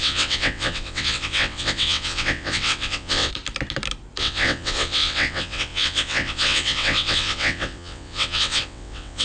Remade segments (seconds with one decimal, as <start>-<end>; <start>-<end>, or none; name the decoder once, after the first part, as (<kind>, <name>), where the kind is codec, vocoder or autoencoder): 0.0-3.3 (vocoder, WaveNeXt); 4.2-9.2